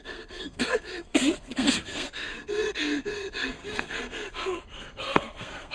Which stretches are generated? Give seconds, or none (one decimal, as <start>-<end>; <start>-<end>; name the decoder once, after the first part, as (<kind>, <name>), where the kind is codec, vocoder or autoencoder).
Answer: 0.0-5.7 (codec, SNAC)

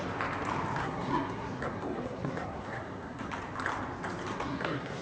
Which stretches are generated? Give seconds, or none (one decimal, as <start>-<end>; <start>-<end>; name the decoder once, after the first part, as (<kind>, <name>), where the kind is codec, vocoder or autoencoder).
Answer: 0.8-3.3 (codec, SNAC); 4.3-5.0

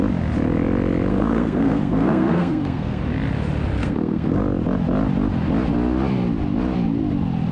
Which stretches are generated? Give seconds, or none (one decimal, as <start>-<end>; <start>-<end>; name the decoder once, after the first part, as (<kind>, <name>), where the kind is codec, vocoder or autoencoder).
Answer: 1.1-3.0 (codec, SNAC); 3.8-4.4